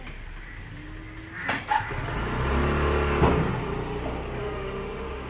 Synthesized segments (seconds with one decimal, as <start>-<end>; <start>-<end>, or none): 4.4-5.3